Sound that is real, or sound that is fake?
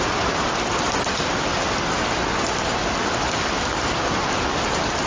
real